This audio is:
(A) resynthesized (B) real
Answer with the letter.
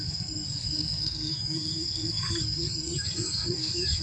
A